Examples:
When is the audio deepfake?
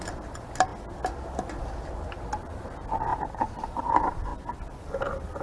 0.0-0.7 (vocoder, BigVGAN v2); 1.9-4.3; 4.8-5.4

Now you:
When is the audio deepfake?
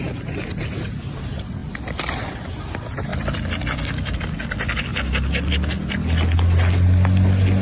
3.1-4.2 (vocoder, BigVGAN v2)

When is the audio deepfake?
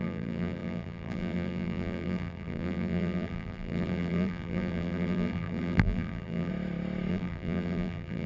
0.0-6.5 (vocoder, BigVGAN v2); 7.1-8.3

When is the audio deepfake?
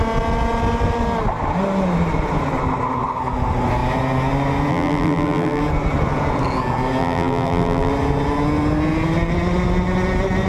4.7-5.6 (vocoder, BigVGAN v2); 7.0-7.9